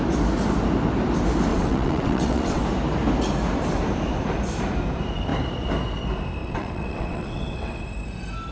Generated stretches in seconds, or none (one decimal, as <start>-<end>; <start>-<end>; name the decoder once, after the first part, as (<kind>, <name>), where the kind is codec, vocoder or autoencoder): 1.5-2.6 (vocoder, WaveNeXt); 6.4-7.7